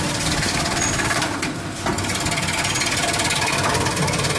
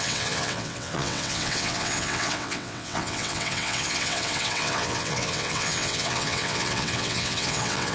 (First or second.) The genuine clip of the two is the first